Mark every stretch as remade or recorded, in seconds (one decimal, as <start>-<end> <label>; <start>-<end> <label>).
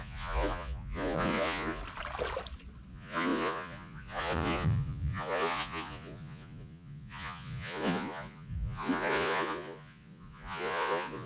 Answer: 0.0-1.8 remade; 1.8-2.9 recorded; 2.9-11.3 remade